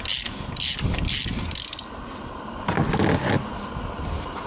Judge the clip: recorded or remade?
recorded